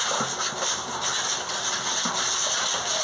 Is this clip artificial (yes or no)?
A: no